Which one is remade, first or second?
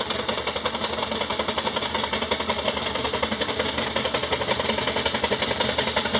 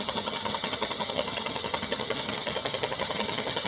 second